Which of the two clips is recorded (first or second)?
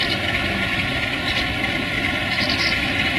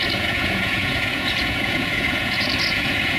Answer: first